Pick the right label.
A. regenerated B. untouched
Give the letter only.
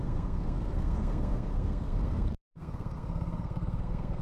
A